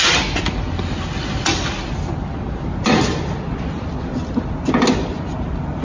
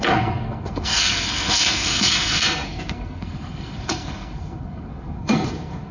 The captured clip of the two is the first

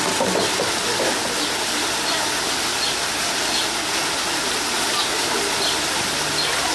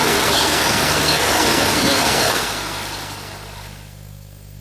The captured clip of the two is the first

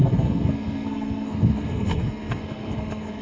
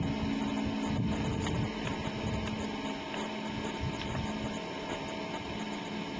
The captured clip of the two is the second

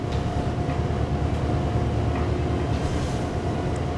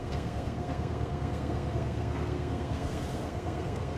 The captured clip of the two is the first